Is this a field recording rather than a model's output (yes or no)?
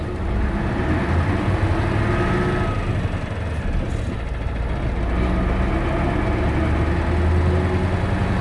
yes